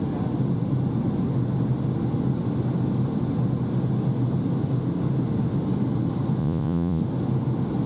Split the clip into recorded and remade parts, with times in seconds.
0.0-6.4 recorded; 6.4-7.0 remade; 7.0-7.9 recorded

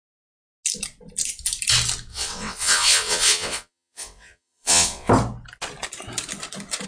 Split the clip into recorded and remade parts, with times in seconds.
0.0-2.1 recorded; 2.1-5.1 remade; 5.1-6.9 recorded

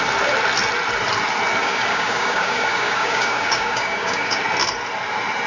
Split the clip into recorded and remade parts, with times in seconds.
0.0-1.6 recorded; 1.6-4.4 remade; 4.4-5.5 recorded